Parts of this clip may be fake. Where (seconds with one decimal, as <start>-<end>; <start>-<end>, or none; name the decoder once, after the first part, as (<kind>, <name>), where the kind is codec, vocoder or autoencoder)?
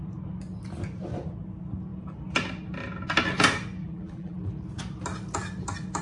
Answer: 3.8-4.5 (vocoder, BigVGAN v2)